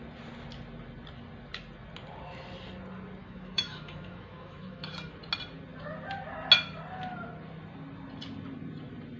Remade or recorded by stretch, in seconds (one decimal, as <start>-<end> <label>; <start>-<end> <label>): 0.0-3.2 recorded; 3.2-4.9 remade; 4.9-9.2 recorded